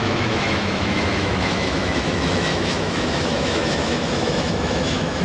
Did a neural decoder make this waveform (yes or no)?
yes